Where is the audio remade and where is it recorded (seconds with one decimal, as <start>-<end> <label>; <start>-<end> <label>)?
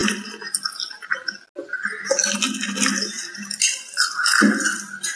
0.0-3.1 recorded; 3.1-5.2 remade